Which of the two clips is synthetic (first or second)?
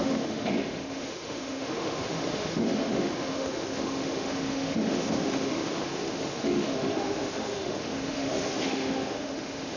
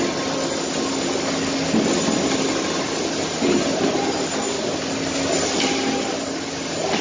first